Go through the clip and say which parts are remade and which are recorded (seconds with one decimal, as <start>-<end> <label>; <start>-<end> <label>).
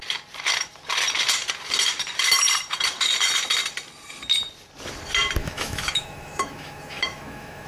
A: 0.0-5.4 recorded; 5.4-7.7 remade